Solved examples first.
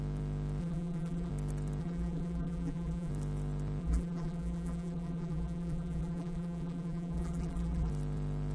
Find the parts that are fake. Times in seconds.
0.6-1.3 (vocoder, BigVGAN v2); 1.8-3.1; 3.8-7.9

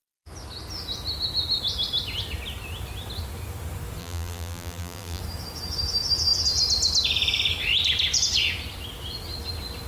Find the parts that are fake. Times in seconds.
4.0-5.2 (vocoder, BigVGAN v2)

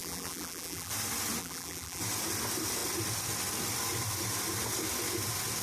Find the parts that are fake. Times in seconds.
0.0-0.9 (vocoder, BigVGAN v2); 1.4-2.0

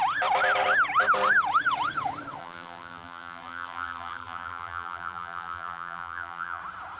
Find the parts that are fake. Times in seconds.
2.4-6.6 (vocoder, BigVGAN v2)